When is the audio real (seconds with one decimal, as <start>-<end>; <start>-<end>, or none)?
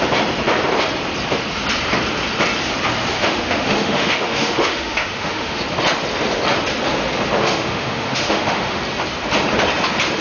0.0-3.1; 5.6-7.4; 8.8-10.2